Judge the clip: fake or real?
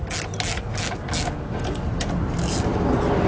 real